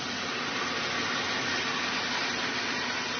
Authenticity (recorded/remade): recorded